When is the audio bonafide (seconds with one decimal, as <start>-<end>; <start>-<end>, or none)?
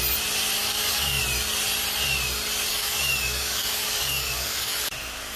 0.0-0.6; 1.2-2.7; 4.9-5.4